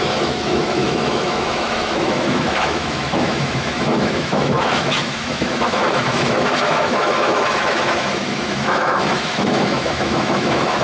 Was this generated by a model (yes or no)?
yes